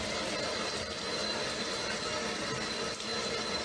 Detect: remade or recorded recorded